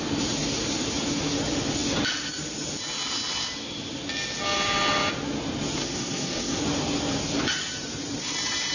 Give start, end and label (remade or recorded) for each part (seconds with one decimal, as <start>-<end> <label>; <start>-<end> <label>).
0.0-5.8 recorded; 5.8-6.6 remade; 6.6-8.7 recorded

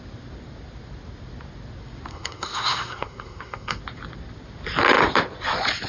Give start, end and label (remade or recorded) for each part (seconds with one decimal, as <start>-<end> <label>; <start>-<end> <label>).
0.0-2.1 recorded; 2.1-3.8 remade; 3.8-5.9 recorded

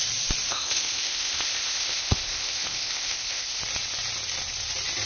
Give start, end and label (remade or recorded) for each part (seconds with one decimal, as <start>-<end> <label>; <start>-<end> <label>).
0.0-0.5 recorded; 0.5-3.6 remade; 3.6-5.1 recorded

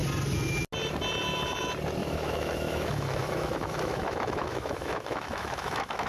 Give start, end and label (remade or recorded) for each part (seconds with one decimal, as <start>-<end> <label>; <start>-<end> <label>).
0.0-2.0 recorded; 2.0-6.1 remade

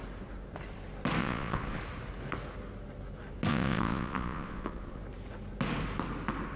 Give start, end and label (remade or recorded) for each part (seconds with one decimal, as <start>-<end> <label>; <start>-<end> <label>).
0.0-1.2 recorded; 1.2-1.8 remade; 1.8-3.5 recorded; 3.5-5.0 remade; 5.0-6.6 recorded

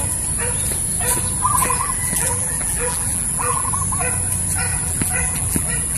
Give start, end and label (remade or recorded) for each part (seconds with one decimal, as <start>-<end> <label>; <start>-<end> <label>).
0.0-1.6 recorded; 1.6-3.7 remade; 3.7-4.7 recorded; 4.7-6.0 remade